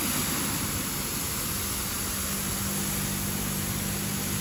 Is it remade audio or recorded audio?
recorded